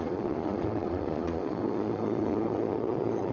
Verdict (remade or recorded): remade